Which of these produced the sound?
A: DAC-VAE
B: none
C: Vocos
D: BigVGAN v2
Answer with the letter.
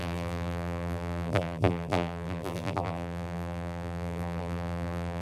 D